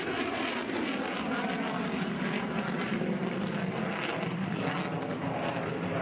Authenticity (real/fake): real